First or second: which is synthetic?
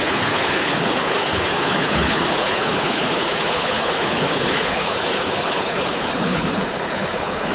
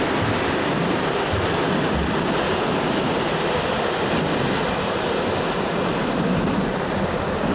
first